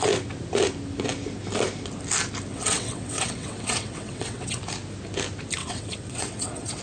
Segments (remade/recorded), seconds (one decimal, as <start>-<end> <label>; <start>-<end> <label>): 0.0-2.5 recorded; 2.5-4.6 remade; 4.6-5.6 recorded; 5.6-6.8 remade